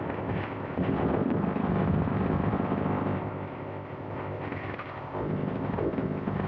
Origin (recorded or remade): remade